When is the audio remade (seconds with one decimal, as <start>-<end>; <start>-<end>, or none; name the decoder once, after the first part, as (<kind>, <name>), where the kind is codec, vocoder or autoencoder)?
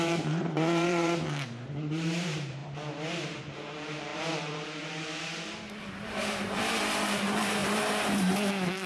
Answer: 0.0-2.6 (vocoder, BigVGAN v2); 3.4-8.9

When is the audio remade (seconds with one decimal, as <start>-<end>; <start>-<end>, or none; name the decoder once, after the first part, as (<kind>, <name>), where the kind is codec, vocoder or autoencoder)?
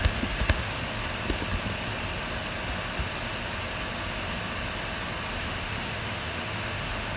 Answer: 0.0-1.0 (autoencoder, DAC-VAE); 5.3-7.2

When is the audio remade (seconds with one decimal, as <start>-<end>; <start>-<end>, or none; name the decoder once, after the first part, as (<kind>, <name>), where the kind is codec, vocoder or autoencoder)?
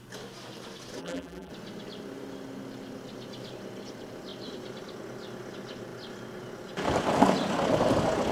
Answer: 1.0-1.5 (vocoder, BigVGAN v2)